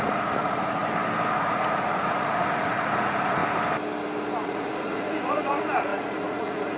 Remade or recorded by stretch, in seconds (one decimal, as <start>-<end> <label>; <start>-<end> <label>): 0.0-0.8 remade; 0.8-1.3 recorded; 1.3-3.4 remade; 3.4-4.4 recorded; 4.4-6.8 remade